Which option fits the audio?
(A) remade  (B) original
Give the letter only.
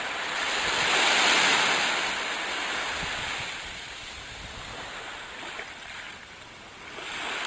B